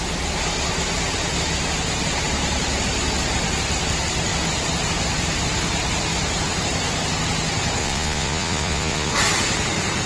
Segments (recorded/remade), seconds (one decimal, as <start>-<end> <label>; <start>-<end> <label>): 0.0-7.8 recorded; 7.8-9.1 remade; 9.1-10.1 recorded